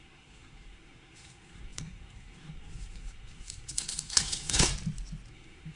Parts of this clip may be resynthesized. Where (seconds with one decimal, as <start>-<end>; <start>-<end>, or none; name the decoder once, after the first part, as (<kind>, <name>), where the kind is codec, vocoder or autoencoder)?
0.0-4.7 (codec, SNAC); 5.3-5.8